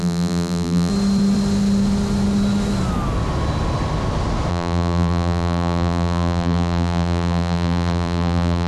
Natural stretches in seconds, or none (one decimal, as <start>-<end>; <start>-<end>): 0.9-4.5